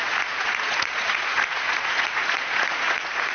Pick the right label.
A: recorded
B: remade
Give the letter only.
B